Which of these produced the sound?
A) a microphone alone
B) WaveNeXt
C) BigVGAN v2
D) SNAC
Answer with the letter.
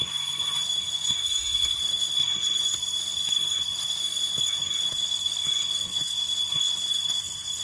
D